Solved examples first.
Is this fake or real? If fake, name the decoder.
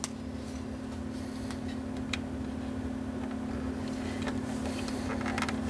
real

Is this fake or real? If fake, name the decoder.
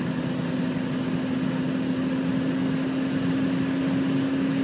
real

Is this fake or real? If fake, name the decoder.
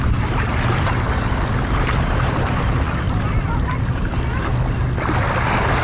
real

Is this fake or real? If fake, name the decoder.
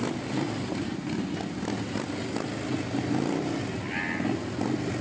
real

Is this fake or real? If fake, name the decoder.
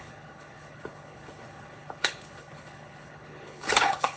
fake, codec, HILCodec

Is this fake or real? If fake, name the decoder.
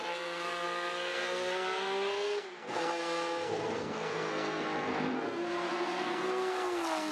fake, codec, SNAC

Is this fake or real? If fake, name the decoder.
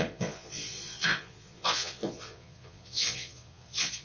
fake, vocoder, Vocos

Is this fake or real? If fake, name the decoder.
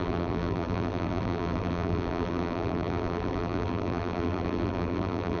fake, vocoder, BigVGAN v2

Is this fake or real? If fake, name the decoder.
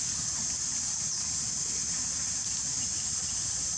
real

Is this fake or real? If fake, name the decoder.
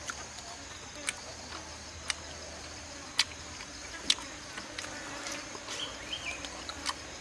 real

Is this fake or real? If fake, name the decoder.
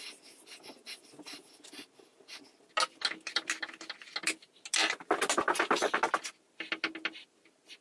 real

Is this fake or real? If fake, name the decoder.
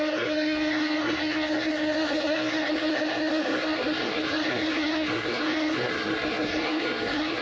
fake, codec, SNAC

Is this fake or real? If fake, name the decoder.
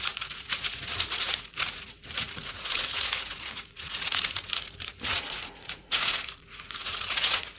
fake, vocoder, Vocos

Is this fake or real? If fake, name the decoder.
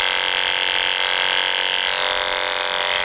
real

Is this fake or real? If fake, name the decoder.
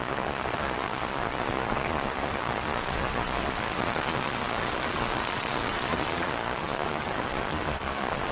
fake, vocoder, Vocos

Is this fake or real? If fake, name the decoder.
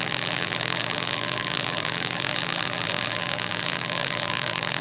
fake, vocoder, BigVGAN v2